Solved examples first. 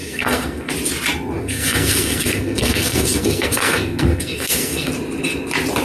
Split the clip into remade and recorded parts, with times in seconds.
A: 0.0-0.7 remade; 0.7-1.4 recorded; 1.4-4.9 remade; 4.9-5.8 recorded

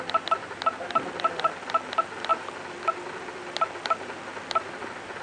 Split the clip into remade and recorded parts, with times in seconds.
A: 0.0-5.2 recorded

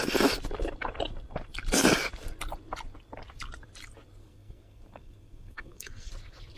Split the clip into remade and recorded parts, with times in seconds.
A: 0.0-4.2 recorded; 4.2-6.1 remade; 6.1-6.6 recorded

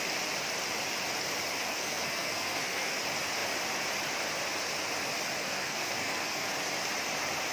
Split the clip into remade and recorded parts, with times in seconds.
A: 0.0-1.7 recorded; 1.7-3.0 remade; 3.0-5.4 recorded; 5.4-6.5 remade; 6.5-7.5 recorded